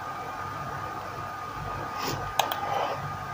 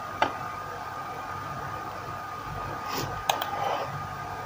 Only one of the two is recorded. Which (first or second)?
first